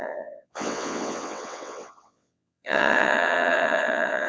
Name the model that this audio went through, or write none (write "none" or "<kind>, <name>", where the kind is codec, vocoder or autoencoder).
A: vocoder, WaveNeXt